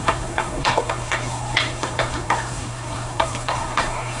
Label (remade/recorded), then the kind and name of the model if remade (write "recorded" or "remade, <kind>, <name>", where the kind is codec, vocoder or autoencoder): remade, codec, SNAC